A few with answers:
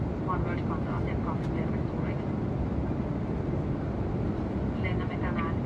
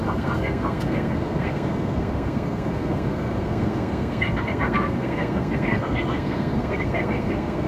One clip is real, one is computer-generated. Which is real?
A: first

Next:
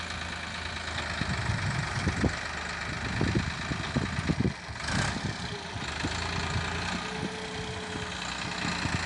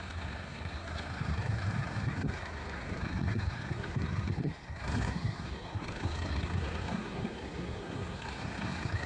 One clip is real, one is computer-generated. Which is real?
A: first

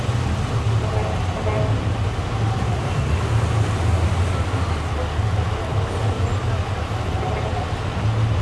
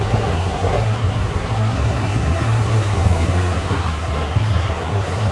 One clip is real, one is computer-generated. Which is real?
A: first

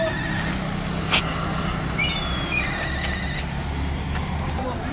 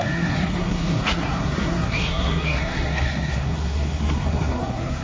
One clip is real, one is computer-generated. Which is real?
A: first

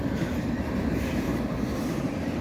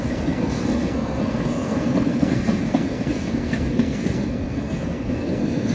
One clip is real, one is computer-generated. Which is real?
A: first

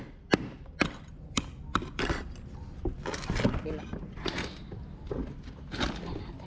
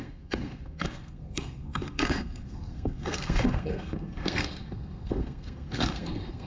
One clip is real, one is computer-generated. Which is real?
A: first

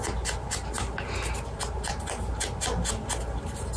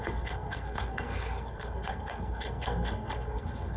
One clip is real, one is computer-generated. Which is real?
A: first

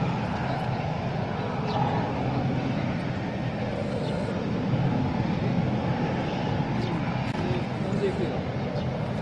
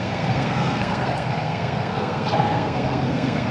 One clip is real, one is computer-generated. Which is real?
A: first